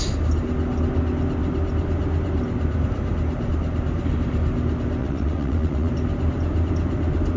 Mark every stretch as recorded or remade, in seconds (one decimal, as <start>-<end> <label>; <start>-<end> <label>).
0.0-5.0 recorded; 5.0-5.9 remade; 5.9-7.4 recorded